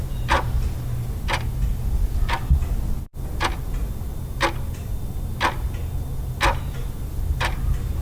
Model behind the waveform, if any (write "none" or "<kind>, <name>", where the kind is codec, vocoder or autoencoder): none